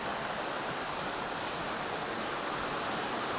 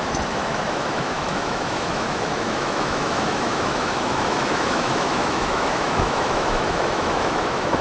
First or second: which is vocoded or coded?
second